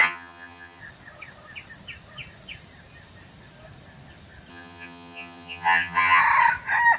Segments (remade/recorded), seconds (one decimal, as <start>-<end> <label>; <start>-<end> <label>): 0.0-0.8 remade; 0.8-4.5 recorded; 4.5-6.2 remade; 6.2-7.0 recorded